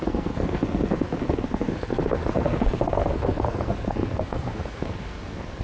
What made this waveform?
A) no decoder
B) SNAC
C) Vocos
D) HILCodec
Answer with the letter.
B